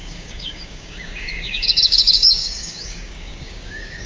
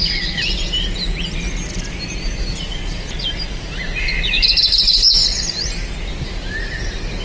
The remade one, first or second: first